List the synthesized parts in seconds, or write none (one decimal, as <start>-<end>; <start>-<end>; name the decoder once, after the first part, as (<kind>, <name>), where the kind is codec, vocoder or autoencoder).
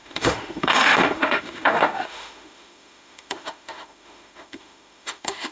0.0-5.5 (autoencoder, DAC-VAE)